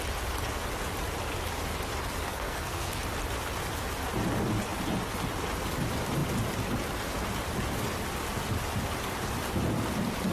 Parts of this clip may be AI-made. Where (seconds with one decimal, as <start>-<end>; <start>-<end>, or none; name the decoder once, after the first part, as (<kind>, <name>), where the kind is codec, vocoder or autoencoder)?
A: 2.3-3.0 (codec, SNAC)